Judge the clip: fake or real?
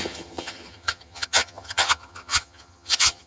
fake